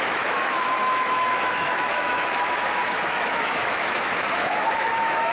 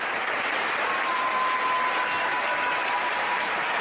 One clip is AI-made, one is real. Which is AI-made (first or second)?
first